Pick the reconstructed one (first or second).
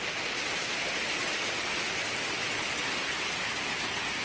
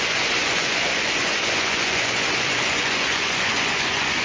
second